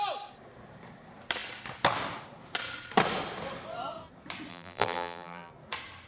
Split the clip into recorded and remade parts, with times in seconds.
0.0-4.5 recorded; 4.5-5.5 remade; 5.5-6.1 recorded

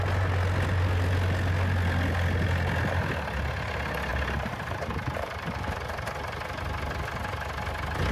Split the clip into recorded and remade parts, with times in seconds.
0.0-4.1 recorded; 4.1-6.6 remade; 6.6-8.1 recorded

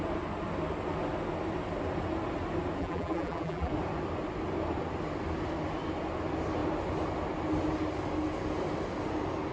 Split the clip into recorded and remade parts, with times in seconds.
0.0-2.8 recorded; 2.8-3.7 remade; 3.7-9.5 recorded

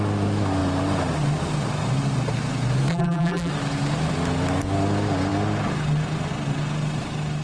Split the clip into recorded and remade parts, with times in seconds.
0.0-2.9 recorded; 2.9-3.5 remade; 3.5-7.4 recorded

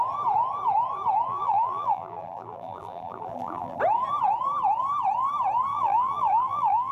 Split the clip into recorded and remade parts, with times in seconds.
0.0-1.3 recorded; 1.3-3.8 remade; 3.8-5.7 recorded; 5.7-6.9 remade

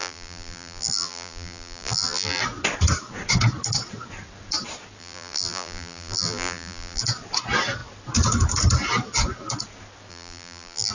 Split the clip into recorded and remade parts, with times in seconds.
0.0-2.4 remade; 2.4-5.0 recorded; 5.0-7.0 remade; 7.0-10.1 recorded; 10.1-10.9 remade

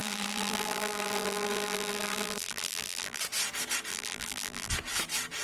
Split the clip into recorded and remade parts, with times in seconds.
0.0-3.2 remade; 3.2-3.9 recorded; 3.9-4.7 remade; 4.7-5.4 recorded

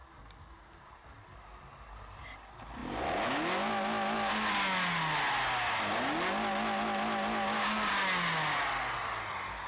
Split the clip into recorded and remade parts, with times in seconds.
0.0-9.7 recorded